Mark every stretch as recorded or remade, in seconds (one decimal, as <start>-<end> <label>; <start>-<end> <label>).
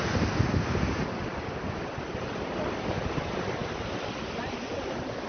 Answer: 0.0-1.3 recorded; 1.3-2.3 remade; 2.3-3.6 recorded; 3.6-4.7 remade; 4.7-5.3 recorded